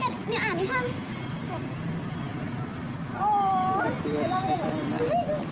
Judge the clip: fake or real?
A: real